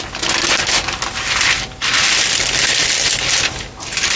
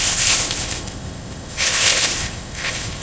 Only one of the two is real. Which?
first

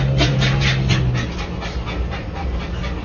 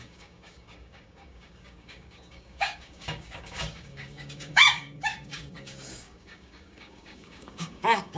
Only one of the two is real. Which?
first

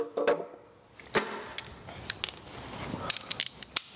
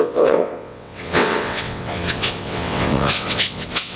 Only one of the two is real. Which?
first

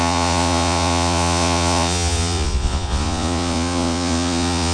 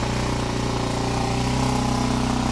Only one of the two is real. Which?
second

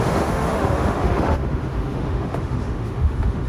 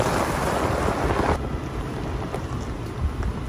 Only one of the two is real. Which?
second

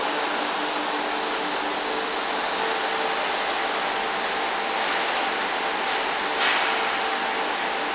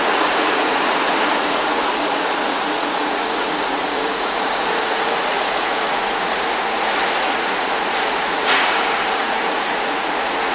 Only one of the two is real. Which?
first